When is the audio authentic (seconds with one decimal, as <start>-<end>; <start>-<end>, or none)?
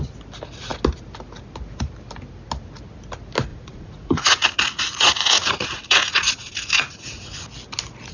0.0-3.5; 7.3-8.1